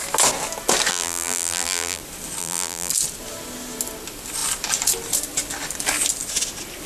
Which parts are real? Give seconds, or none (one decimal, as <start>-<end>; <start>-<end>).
0.0-0.9; 2.0-2.4; 2.9-6.9